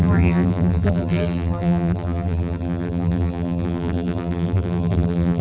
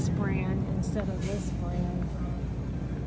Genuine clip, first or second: second